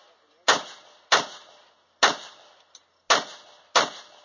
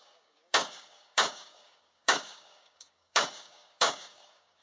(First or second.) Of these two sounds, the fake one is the second